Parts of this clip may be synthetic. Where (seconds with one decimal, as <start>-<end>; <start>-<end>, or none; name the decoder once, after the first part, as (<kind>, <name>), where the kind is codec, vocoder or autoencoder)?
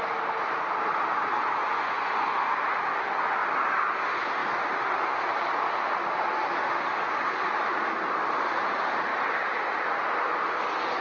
1.6-2.5 (vocoder, Vocos)